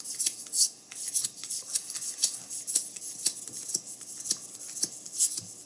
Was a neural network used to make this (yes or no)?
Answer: no